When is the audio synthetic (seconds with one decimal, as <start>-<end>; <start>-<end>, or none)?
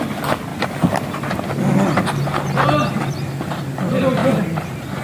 4.2-5.0